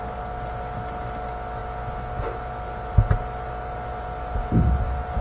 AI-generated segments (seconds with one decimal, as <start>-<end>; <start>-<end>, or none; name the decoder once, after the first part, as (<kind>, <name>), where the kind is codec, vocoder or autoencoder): none